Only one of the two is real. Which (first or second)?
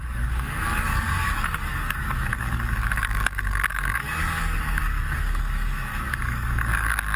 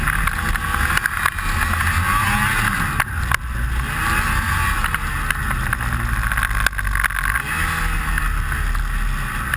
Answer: second